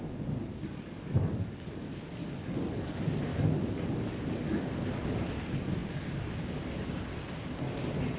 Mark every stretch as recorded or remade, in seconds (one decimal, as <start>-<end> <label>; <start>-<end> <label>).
0.0-0.5 recorded; 0.5-2.0 remade; 2.0-3.3 recorded; 3.3-4.9 remade; 4.9-8.2 recorded